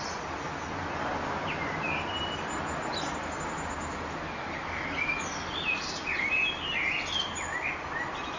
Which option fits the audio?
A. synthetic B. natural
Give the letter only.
B